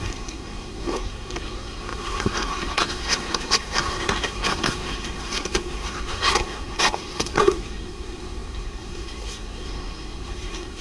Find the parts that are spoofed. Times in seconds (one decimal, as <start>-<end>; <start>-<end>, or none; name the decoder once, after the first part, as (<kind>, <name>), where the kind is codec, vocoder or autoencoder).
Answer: 0.0-10.8 (codec, SNAC)